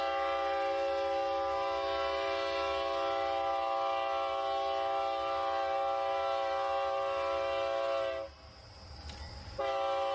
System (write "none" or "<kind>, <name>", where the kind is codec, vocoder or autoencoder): none